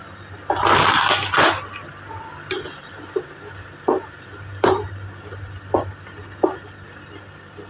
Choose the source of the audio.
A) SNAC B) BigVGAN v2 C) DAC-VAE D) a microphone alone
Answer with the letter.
D